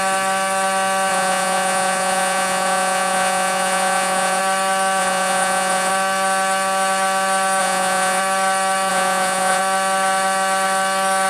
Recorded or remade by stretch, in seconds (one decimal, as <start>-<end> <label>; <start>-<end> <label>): 0.0-1.1 recorded; 1.1-4.4 remade; 4.4-5.0 recorded; 5.0-5.9 remade; 5.9-7.6 recorded; 7.6-8.2 remade; 8.2-8.9 recorded; 8.9-9.6 remade; 9.6-11.3 recorded